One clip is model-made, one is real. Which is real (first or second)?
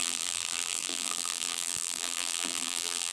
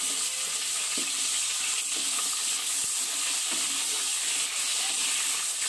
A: second